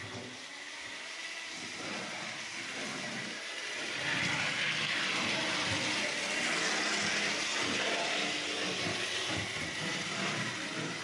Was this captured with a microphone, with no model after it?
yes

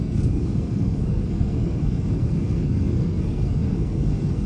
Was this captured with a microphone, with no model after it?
no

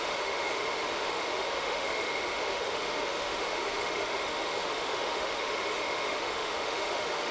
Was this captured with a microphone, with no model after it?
no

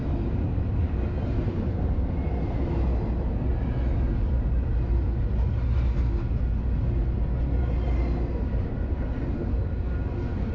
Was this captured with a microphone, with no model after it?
yes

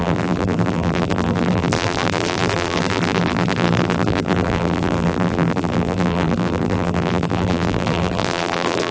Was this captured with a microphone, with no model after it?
no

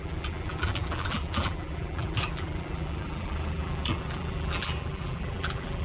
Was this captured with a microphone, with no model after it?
no